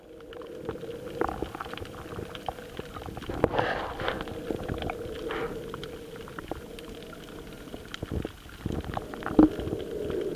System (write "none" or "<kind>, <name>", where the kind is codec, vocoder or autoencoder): none